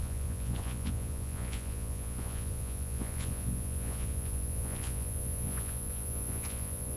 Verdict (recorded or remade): remade